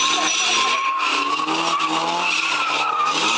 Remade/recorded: recorded